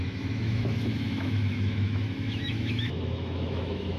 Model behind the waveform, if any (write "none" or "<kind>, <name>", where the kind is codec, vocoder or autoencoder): autoencoder, DAC-VAE